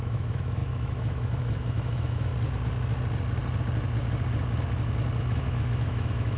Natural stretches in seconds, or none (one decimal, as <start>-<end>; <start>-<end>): 2.3-5.2